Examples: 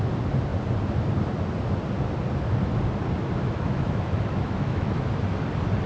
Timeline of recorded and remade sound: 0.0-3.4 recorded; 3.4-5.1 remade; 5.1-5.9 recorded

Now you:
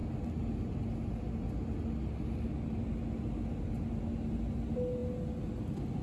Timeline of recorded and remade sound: 0.0-6.0 recorded

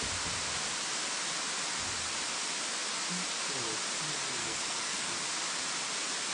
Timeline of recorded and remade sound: 0.0-4.4 recorded; 4.4-5.1 remade; 5.1-6.3 recorded

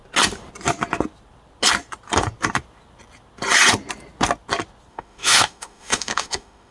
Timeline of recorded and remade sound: 0.0-4.9 recorded; 4.9-6.7 remade

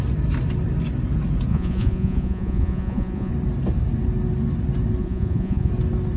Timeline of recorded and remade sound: 0.0-1.5 recorded; 1.5-3.3 remade; 3.3-5.0 recorded; 5.0-5.7 remade; 5.7-6.2 recorded

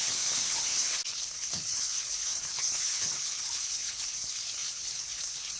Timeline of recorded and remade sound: 0.0-5.6 remade